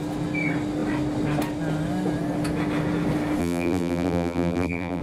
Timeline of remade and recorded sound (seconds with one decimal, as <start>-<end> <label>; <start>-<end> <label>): 0.0-3.4 recorded; 3.4-5.0 remade